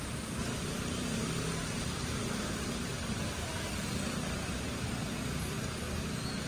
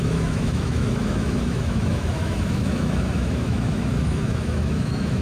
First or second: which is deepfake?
second